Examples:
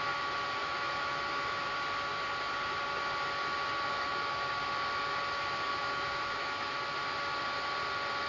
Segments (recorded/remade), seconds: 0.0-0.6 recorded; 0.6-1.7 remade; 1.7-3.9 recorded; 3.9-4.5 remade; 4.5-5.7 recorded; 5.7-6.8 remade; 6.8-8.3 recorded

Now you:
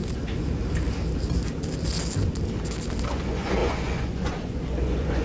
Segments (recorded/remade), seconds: 0.0-3.1 recorded; 3.1-5.2 remade

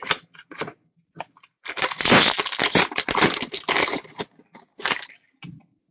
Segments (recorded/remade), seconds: 0.0-5.9 recorded